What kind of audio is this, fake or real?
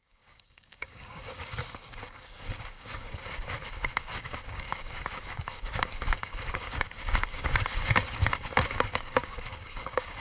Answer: fake